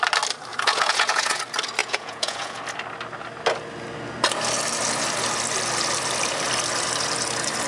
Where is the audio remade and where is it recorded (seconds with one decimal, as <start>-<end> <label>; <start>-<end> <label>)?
0.0-0.5 recorded; 0.5-1.4 remade; 1.4-1.8 recorded; 1.8-2.6 remade; 2.6-7.7 recorded